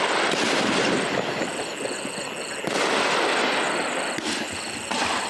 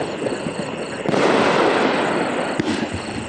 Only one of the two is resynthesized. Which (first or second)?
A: second